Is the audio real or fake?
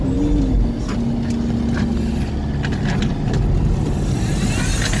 real